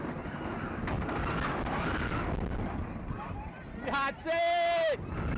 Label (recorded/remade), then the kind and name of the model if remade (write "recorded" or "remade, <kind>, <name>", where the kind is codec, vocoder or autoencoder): recorded